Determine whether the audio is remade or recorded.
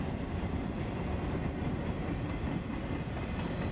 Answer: recorded